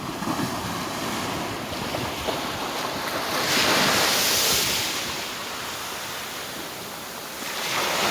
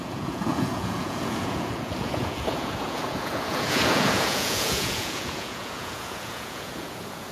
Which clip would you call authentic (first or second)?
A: first